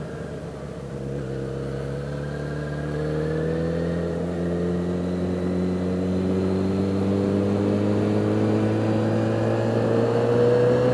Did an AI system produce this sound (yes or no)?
no